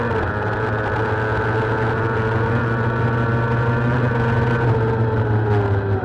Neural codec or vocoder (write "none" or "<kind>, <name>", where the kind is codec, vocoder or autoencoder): none